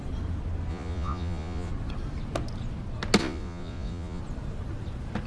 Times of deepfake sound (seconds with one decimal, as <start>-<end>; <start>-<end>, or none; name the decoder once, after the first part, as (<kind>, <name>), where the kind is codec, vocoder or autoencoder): 0.7-1.7 (vocoder, Vocos); 3.2-4.2